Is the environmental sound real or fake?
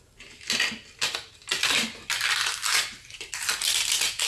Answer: real